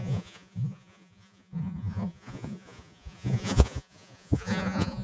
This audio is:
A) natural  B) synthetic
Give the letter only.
B